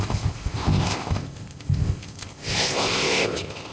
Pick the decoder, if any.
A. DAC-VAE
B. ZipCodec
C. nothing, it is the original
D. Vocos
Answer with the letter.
B